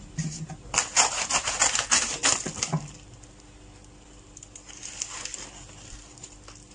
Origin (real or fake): real